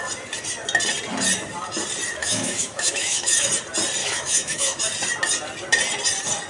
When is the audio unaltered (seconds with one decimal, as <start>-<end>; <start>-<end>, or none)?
0.0-2.2; 3.5-4.0; 4.8-6.5